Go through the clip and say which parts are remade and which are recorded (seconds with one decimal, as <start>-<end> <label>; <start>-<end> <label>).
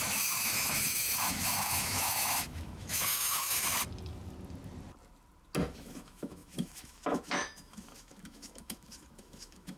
0.0-3.7 remade; 3.7-5.7 recorded; 5.7-9.8 remade